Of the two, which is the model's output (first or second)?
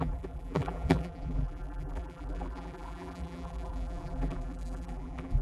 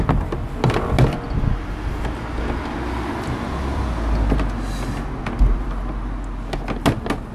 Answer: first